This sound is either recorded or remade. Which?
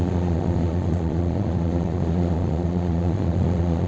remade